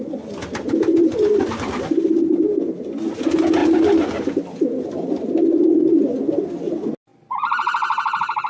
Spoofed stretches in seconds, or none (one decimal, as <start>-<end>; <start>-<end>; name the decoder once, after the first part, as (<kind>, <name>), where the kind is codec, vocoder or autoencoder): 1.0-2.9 (vocoder, BigVGAN v2)